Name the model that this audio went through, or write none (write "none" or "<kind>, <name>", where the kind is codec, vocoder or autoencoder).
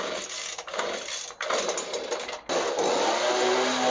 none